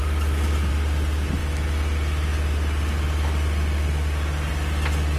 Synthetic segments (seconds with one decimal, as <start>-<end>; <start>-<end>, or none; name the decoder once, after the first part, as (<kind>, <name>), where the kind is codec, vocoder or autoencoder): none